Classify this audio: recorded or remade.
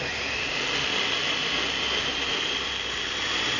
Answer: remade